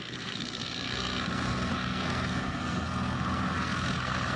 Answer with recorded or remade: remade